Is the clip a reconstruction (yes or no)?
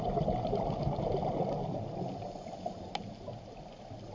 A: no